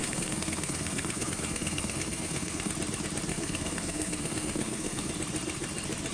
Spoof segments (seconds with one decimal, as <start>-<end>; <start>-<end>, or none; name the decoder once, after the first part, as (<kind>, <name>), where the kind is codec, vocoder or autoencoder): 0.0-2.7 (codec, SNAC); 3.3-5.1